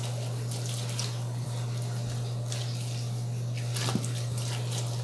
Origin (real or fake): real